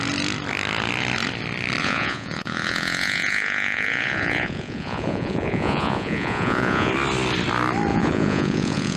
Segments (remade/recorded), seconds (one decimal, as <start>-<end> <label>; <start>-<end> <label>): 0.0-1.8 recorded; 1.8-6.9 remade; 6.9-7.9 recorded; 7.9-9.0 remade